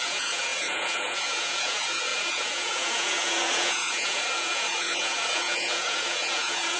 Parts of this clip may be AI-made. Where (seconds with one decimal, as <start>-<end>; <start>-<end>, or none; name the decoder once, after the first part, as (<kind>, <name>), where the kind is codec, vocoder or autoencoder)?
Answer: 0.0-6.8 (vocoder, Vocos)